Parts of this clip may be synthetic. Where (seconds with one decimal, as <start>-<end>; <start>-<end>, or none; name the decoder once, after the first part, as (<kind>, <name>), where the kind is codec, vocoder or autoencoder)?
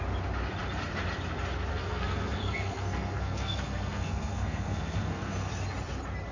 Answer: 1.7-5.5 (codec, SNAC)